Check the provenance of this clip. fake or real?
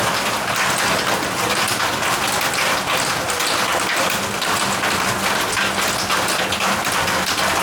real